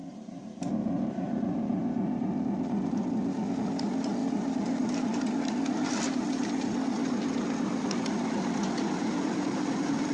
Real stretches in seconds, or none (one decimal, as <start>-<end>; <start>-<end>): 3.1-4.2; 5.2-10.1